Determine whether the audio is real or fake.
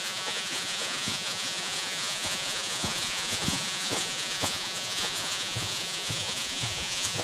fake